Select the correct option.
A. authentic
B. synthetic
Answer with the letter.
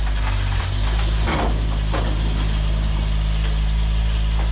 A